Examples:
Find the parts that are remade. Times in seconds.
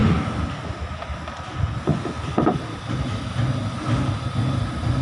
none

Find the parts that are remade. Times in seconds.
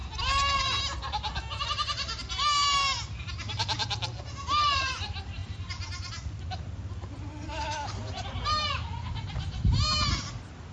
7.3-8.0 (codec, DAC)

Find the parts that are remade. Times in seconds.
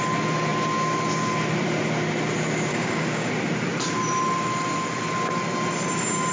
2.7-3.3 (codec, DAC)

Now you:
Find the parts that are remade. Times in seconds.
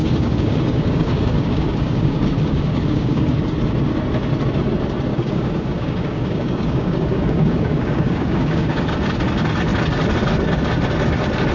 0.0-3.4 (codec, DAC); 5.1-8.9